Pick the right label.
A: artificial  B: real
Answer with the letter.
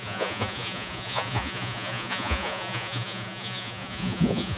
A